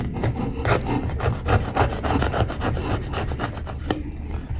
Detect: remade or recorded recorded